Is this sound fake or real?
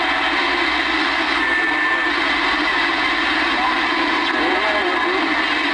real